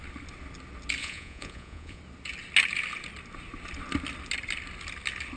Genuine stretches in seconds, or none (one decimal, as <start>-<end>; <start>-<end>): 0.0-1.0; 2.0-5.4